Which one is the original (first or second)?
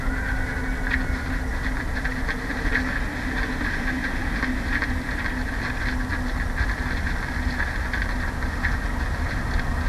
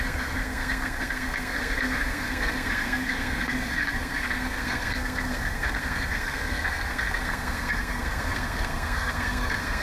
first